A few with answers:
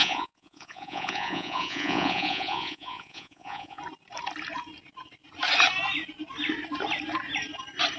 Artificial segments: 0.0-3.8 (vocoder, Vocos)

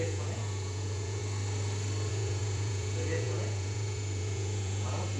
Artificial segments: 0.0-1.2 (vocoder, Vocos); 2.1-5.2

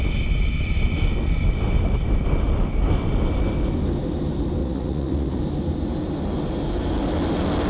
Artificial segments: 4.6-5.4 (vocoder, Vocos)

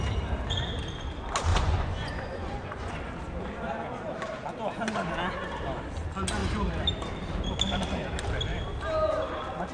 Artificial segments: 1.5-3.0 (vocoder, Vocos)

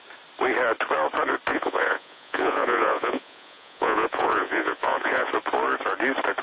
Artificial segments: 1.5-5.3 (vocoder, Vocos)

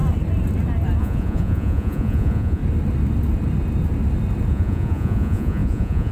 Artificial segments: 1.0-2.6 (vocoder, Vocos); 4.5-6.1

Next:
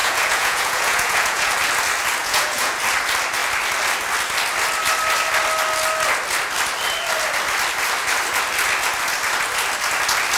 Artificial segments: 0.0-1.5 (vocoder, Vocos); 2.2-2.8

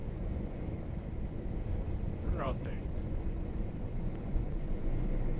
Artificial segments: 0.0-0.6 (vocoder, Vocos); 2.2-5.4